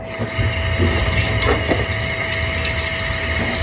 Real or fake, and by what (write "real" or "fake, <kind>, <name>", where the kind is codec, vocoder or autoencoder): real